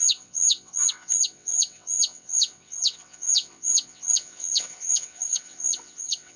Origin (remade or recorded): remade